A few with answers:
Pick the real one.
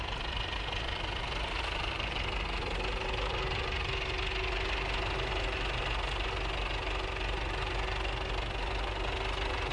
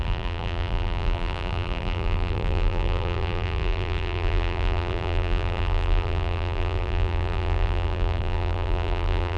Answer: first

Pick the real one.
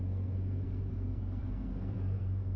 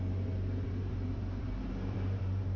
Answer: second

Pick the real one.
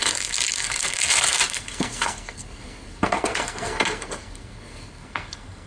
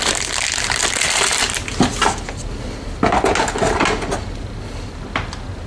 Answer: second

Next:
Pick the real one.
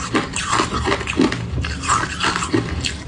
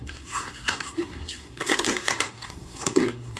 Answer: first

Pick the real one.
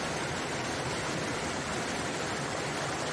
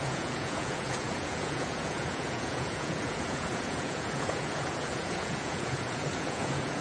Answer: first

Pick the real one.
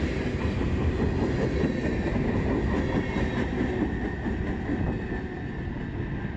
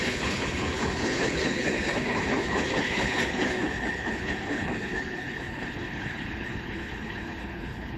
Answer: first